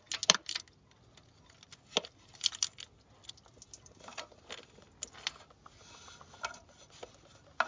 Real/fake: real